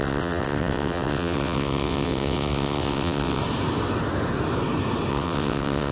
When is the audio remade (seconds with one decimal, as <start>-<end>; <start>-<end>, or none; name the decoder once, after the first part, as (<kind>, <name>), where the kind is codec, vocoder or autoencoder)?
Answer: 0.0-3.4 (vocoder, WaveNeXt); 5.1-5.9

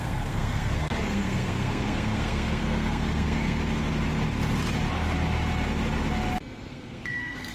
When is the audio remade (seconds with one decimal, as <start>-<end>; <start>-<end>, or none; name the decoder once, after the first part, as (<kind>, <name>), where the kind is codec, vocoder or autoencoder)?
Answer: 0.0-3.6 (codec, SNAC); 6.6-7.5

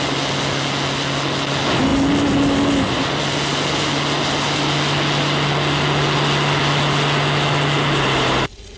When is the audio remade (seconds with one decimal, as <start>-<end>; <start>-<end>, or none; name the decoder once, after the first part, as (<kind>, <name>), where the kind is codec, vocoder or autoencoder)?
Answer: none

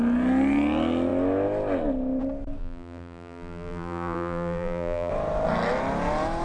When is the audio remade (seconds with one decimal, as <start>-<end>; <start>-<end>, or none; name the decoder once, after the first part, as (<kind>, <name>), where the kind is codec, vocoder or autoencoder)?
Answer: 2.6-5.1 (vocoder, BigVGAN v2)

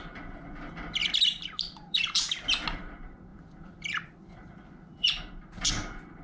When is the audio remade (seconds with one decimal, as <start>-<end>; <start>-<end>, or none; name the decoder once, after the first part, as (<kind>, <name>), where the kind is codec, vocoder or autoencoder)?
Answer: 1.0-2.2 (vocoder, BigVGAN v2); 3.3-5.1

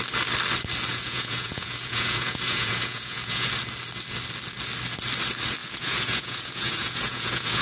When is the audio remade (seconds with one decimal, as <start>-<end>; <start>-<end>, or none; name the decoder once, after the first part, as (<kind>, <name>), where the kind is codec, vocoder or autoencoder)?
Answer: 0.9-3.5 (vocoder, Vocos); 5.6-7.6

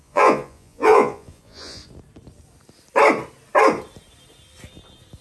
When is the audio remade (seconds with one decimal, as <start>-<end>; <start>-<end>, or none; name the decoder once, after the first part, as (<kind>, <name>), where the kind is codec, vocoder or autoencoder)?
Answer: 0.0-1.8 (vocoder, Vocos)